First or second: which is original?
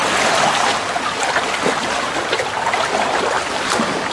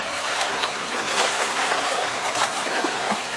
first